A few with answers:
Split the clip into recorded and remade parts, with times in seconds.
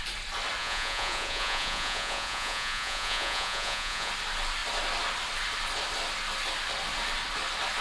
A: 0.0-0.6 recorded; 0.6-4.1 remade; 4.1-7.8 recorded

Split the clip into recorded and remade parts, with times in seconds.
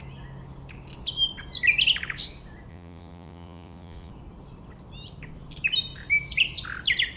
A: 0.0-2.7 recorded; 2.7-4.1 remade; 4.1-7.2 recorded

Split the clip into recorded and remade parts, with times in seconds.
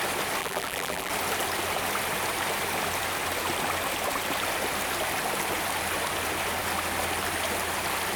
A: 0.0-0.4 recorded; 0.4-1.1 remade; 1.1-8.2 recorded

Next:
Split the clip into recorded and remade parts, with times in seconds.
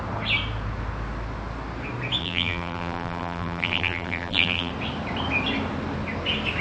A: 0.0-2.2 recorded; 2.2-4.7 remade; 4.7-6.6 recorded